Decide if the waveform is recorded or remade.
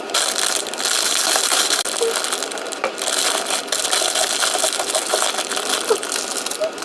recorded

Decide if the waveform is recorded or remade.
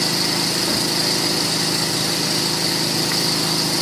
recorded